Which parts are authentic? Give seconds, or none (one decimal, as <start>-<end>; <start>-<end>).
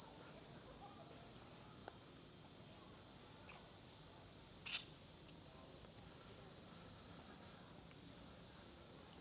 0.0-9.2